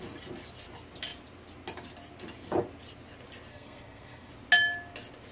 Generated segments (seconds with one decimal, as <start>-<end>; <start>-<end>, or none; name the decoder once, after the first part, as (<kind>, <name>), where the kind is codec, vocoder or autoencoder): 3.5-4.3 (codec, SNAC)